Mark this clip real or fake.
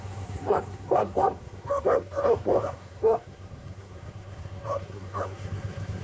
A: fake